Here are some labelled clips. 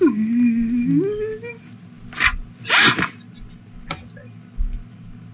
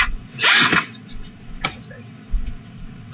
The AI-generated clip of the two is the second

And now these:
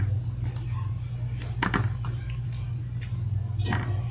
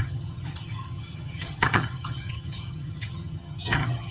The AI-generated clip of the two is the second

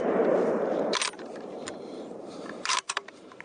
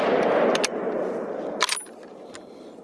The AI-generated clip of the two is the first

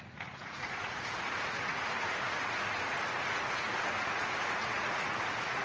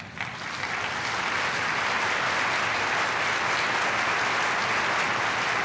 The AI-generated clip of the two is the first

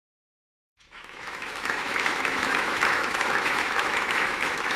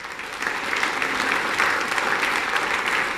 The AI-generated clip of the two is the first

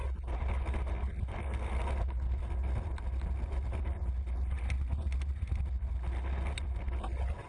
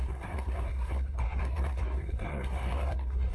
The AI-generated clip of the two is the second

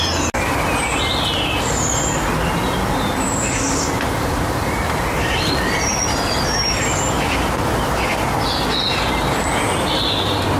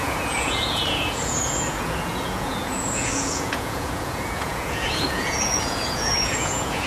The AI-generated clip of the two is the second